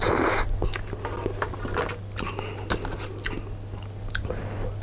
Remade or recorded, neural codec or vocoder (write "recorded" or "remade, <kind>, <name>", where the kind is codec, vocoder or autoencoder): recorded